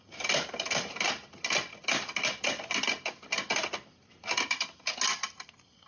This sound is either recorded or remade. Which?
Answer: recorded